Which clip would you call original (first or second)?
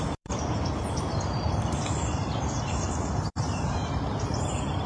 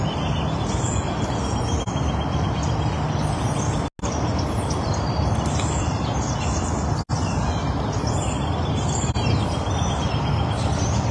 second